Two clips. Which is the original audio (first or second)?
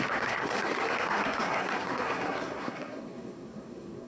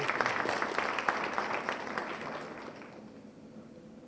second